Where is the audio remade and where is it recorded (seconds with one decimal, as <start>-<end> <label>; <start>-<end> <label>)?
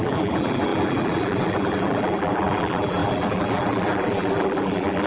0.0-5.1 remade